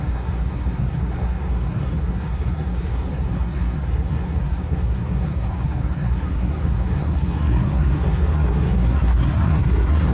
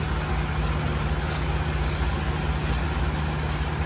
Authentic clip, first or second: second